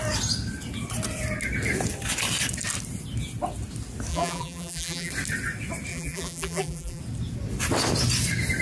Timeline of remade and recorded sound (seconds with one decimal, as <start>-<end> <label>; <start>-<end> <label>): 0.0-4.1 recorded; 4.1-5.1 remade; 5.1-5.9 recorded; 5.9-7.0 remade; 7.0-8.6 recorded